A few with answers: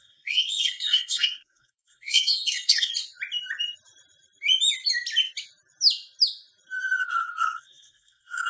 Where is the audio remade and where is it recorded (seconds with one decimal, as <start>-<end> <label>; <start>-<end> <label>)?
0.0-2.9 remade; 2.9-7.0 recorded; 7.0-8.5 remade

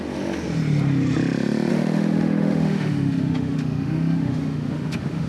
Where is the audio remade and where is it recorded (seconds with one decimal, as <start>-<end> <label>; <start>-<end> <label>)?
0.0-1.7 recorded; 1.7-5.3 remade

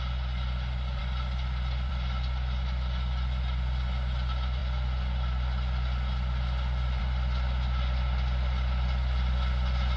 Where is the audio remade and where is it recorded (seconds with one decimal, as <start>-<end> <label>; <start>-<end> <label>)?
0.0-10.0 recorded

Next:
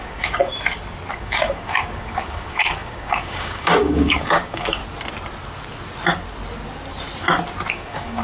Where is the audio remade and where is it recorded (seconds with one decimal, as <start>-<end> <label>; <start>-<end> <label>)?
0.0-0.5 remade; 0.5-1.2 recorded; 1.2-4.8 remade; 4.8-7.7 recorded; 7.7-8.2 remade